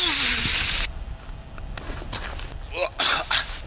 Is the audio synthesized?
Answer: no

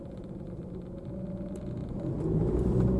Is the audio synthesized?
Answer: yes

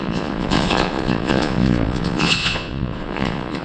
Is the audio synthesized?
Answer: yes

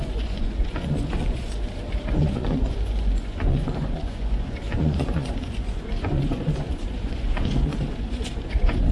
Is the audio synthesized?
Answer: yes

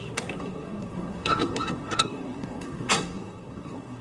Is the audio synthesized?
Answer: yes